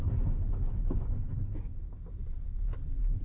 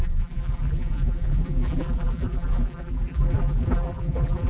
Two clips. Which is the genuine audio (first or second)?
first